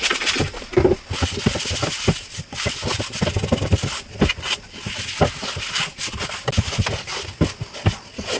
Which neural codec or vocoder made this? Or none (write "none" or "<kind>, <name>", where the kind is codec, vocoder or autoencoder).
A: none